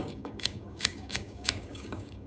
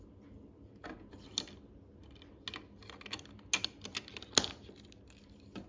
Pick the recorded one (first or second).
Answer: second